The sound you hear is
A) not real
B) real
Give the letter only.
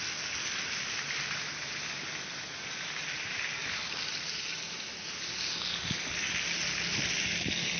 B